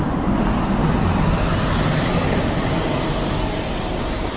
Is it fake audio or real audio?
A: real